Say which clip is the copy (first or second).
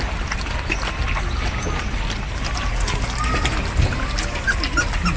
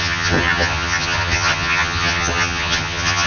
second